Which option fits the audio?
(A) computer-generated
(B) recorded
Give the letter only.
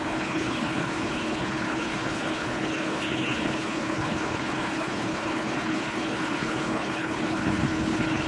A